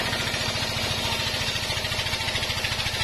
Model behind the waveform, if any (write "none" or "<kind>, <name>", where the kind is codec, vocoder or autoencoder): none